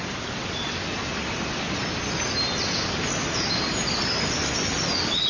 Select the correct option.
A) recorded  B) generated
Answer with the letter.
A